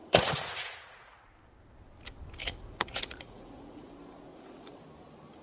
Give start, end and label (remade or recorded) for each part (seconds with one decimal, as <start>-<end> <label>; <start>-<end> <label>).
0.0-1.2 remade; 1.2-2.4 recorded; 2.4-3.9 remade; 3.9-4.3 recorded; 4.3-4.8 remade; 4.8-5.4 recorded